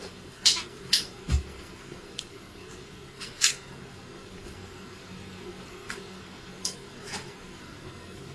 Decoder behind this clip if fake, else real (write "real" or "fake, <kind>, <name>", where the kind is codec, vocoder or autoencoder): fake, codec, SNAC